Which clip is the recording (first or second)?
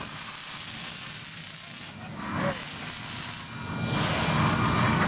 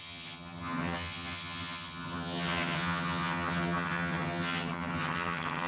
first